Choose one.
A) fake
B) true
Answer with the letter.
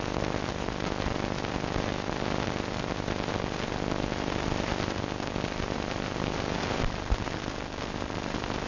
B